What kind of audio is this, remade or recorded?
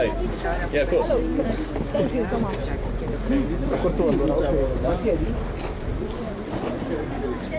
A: recorded